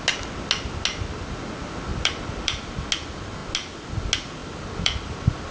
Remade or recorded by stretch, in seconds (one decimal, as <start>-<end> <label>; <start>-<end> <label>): 0.0-1.9 recorded; 1.9-2.6 remade; 2.6-4.4 recorded; 4.4-5.5 remade